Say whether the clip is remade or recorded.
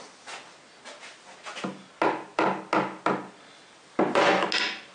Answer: recorded